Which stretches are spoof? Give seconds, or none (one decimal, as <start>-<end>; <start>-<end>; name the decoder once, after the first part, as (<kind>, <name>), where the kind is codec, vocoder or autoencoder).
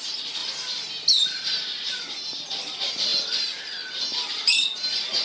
none